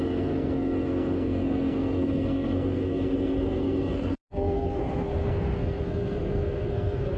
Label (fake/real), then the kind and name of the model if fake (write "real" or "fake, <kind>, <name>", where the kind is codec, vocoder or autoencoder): fake, codec, SNAC